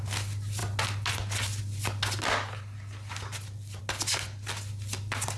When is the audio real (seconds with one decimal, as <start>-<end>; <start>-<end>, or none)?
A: 0.0-5.4